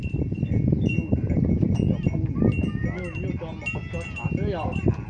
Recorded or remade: recorded